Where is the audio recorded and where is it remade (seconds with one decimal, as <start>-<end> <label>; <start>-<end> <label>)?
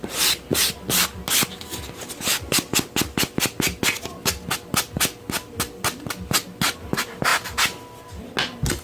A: 0.0-8.8 recorded